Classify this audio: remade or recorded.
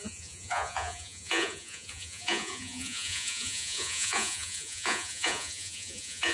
remade